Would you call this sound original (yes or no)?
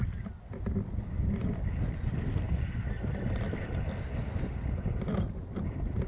yes